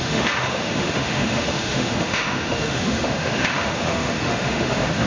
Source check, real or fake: fake